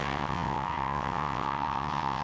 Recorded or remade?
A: remade